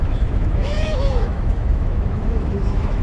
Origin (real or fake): fake